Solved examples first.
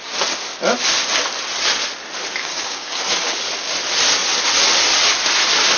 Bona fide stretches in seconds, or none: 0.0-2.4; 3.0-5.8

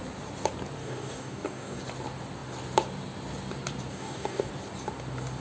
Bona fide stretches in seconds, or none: 0.0-0.8; 1.8-3.9; 4.5-5.4

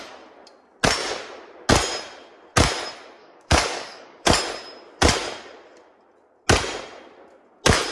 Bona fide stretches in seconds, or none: 0.0-3.2; 4.4-7.9

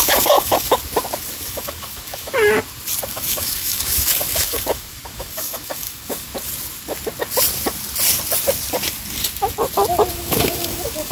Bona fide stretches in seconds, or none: 0.8-1.3; 2.3-3.1; 6.3-10.1

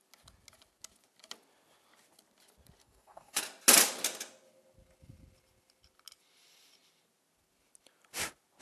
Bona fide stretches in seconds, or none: 0.0-2.8; 3.4-8.6

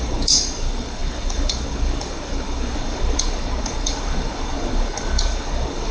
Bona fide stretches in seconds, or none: none

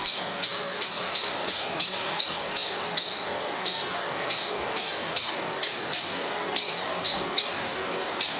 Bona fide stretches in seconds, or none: none

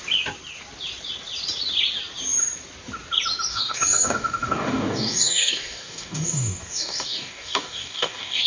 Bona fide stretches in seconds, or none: 0.0-3.5